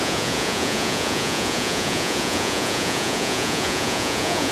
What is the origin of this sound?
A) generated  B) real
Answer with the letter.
A